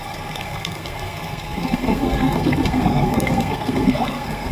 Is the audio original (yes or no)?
no